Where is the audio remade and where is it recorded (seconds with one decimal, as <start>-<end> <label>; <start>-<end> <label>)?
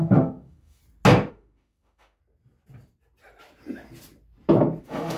0.0-0.8 remade; 0.8-1.3 recorded; 1.3-2.2 remade; 2.2-4.8 recorded; 4.8-5.2 remade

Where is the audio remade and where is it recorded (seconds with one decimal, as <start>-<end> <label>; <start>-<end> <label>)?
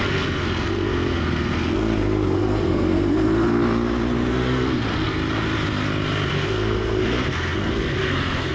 0.0-3.6 remade; 3.6-4.3 recorded; 4.3-5.2 remade; 5.2-6.3 recorded; 6.3-8.5 remade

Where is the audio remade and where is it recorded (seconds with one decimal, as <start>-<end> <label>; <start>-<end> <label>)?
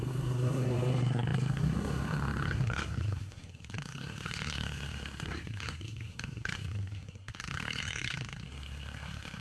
0.0-9.4 remade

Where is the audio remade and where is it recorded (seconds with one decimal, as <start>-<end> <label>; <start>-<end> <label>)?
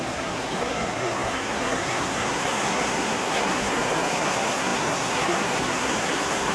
0.0-6.5 remade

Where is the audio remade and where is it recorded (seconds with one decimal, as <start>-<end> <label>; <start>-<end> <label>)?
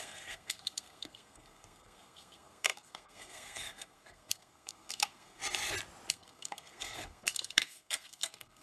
0.0-5.4 remade; 5.4-6.1 recorded; 6.1-8.6 remade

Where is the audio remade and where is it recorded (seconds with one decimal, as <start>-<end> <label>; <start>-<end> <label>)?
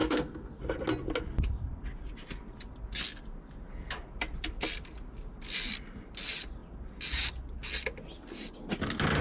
0.0-0.6 remade; 0.6-9.2 recorded